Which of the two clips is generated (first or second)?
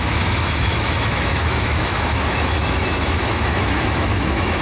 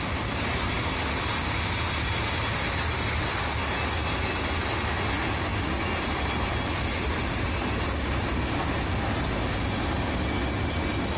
first